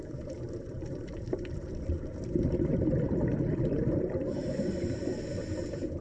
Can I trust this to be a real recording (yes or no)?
no